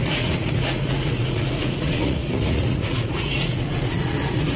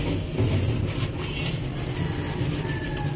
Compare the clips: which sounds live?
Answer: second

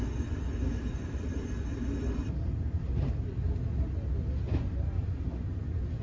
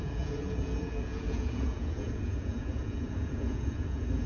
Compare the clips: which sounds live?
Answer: first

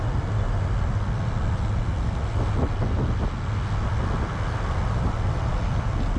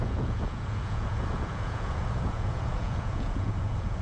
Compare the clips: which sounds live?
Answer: first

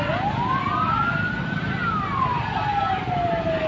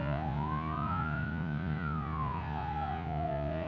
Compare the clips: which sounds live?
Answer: first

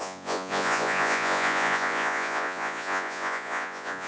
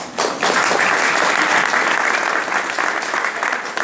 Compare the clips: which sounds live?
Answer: second